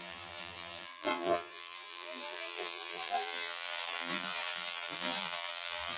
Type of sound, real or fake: fake